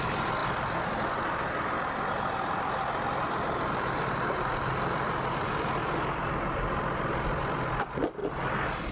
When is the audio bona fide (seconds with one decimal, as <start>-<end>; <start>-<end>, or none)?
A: 0.4-2.1; 8.2-8.9